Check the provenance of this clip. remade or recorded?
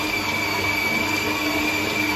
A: recorded